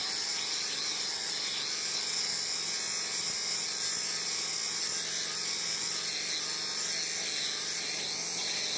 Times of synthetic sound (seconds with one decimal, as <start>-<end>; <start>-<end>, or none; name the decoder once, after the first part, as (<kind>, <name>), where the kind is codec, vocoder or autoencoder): none